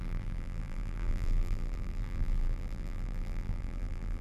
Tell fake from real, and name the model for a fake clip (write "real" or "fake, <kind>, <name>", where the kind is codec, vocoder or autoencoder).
fake, vocoder, BigVGAN v2